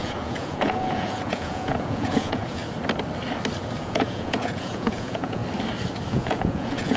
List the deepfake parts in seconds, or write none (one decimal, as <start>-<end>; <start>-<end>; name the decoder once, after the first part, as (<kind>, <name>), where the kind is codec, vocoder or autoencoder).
0.0-2.6 (vocoder, Vocos); 3.8-5.4; 6.1-7.0